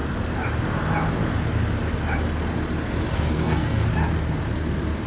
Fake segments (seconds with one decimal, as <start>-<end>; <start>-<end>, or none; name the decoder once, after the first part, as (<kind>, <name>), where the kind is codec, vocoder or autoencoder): 3.1-3.9 (codec, SNAC)